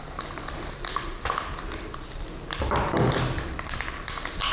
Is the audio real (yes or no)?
yes